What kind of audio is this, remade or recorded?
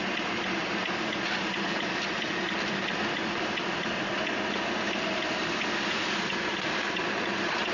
recorded